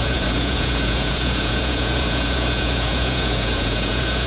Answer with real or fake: fake